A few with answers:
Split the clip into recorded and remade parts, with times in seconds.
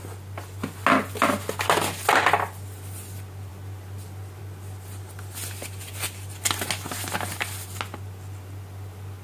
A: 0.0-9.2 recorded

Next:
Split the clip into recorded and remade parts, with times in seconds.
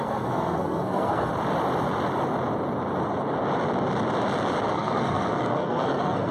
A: 0.0-1.3 remade; 1.3-4.7 recorded; 4.7-6.3 remade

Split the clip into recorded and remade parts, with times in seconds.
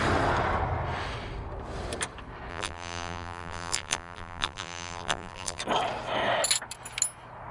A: 0.0-2.5 recorded; 2.5-5.6 remade; 5.6-7.5 recorded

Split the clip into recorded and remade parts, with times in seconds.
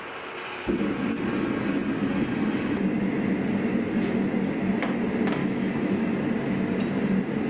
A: 0.0-5.4 recorded; 5.4-6.1 remade; 6.1-7.5 recorded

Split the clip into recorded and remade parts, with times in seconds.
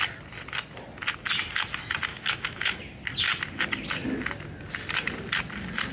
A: 0.0-2.1 recorded; 2.1-2.8 remade; 2.8-5.9 recorded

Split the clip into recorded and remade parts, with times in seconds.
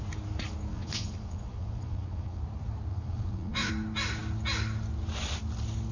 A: 0.0-0.7 recorded; 0.7-2.4 remade; 2.4-2.9 recorded; 2.9-3.7 remade; 3.7-5.9 recorded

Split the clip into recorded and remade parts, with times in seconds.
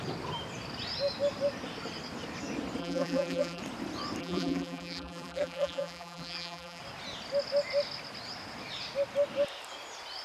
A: 0.0-2.8 recorded; 2.8-3.6 remade; 3.6-4.2 recorded; 4.2-6.8 remade; 6.8-10.2 recorded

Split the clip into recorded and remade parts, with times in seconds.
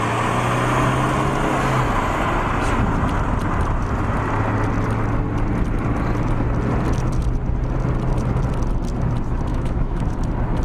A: 0.0-9.5 recorded; 9.5-10.2 remade; 10.2-10.6 recorded